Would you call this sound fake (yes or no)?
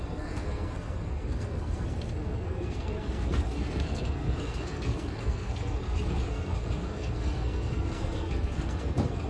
yes